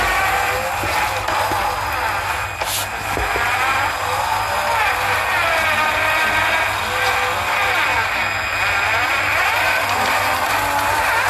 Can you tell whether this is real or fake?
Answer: real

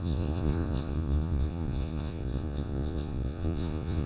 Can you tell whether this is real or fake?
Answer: fake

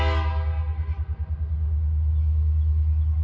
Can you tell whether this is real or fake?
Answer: real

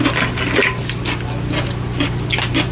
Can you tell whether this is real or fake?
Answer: real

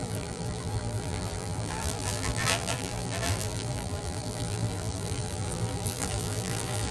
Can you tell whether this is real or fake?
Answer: fake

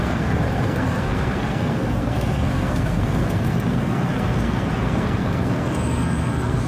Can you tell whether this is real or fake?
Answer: fake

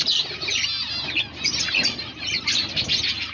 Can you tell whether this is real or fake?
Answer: real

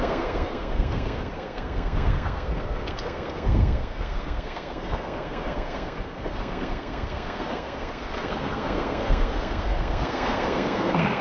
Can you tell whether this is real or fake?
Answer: fake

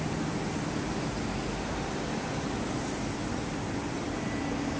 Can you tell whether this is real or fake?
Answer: real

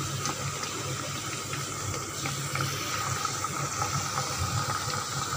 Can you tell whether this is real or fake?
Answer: real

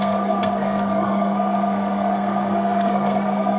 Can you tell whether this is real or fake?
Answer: fake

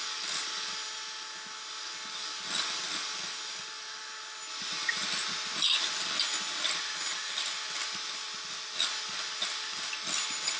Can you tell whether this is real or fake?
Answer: real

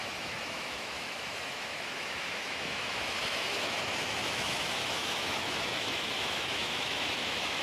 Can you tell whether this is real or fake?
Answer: fake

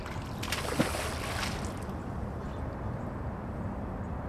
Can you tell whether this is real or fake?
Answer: real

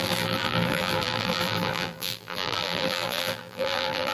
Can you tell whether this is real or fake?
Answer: fake